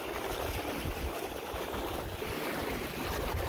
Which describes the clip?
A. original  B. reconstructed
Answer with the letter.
B